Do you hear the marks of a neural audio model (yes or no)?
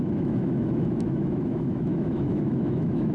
yes